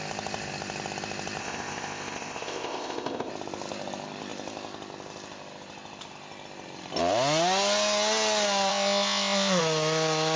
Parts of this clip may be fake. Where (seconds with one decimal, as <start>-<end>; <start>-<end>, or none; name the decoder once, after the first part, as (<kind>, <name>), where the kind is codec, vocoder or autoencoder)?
1.4-3.3 (codec, ZipCodec); 8.7-9.6